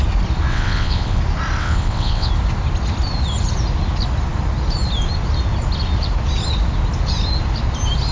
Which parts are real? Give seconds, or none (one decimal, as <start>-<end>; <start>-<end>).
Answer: 0.0-0.5; 1.2-1.6; 2.3-8.1